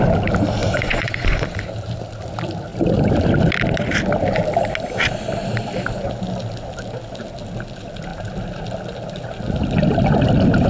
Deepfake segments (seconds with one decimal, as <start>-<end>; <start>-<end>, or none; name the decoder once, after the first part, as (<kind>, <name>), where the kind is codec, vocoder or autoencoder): 0.6-1.6 (vocoder, Vocos)

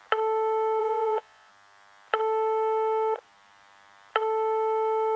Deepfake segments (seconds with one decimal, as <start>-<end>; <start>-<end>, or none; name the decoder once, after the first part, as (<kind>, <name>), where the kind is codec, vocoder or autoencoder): 0.8-1.5 (vocoder, Vocos)